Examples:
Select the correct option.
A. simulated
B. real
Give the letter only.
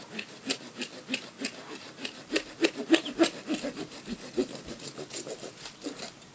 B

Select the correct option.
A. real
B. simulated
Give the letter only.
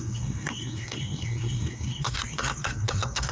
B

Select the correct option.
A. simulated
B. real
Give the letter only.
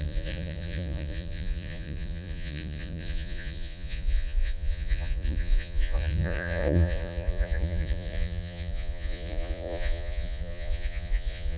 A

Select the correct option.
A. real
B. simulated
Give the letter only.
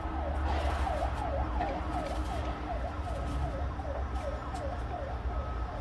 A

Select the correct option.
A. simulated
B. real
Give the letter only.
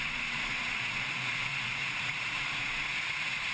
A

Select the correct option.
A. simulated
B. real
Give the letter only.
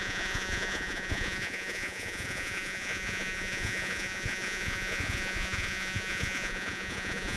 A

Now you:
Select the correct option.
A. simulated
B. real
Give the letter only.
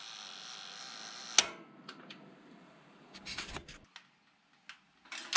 B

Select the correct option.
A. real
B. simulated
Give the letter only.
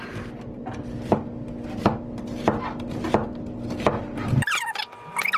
A